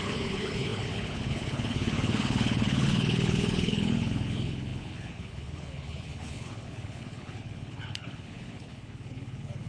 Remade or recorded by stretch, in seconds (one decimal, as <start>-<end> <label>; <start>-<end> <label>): 0.0-9.7 remade